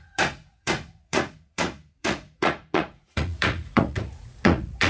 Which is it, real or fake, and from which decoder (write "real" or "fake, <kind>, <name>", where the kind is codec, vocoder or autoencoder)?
fake, vocoder, Vocos